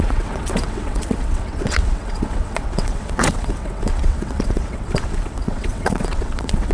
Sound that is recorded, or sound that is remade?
remade